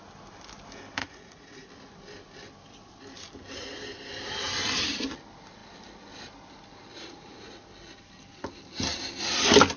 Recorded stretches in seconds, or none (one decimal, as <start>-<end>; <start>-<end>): 0.0-1.0; 1.7-6.9; 7.5-9.8